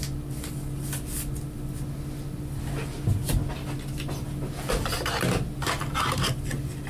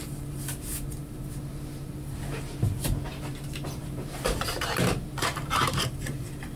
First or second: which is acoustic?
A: first